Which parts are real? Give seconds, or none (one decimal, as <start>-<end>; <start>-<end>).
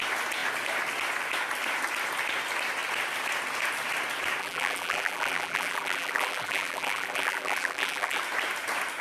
0.0-4.4; 8.2-9.0